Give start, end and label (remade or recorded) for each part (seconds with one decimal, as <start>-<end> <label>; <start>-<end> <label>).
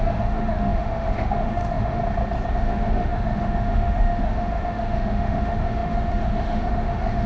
0.0-2.0 remade; 2.0-2.5 recorded; 2.5-7.3 remade